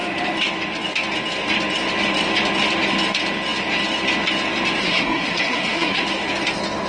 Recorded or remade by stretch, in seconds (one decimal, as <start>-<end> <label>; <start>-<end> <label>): 0.0-4.8 recorded; 4.8-6.0 remade; 6.0-6.9 recorded